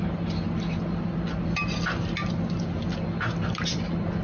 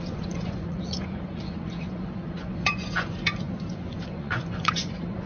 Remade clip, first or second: second